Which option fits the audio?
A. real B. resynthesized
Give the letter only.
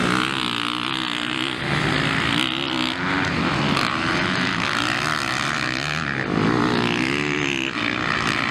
A